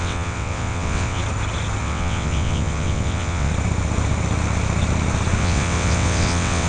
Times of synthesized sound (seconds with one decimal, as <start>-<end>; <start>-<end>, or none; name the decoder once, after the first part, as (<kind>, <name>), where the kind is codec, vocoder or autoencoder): 0.0-1.2 (vocoder, WaveNeXt); 1.8-3.5; 5.4-6.7